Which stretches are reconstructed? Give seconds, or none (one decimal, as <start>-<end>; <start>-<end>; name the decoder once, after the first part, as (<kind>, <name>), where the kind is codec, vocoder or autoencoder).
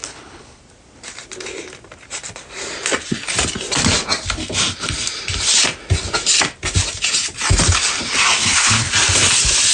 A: 0.0-0.6 (codec, HILCodec); 8.4-8.9